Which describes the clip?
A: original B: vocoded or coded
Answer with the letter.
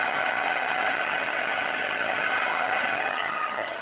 B